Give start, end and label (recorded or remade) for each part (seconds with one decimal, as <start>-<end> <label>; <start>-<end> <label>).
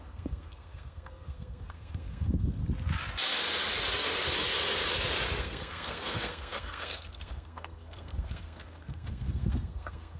0.0-2.6 remade; 2.6-5.4 recorded; 5.4-10.2 remade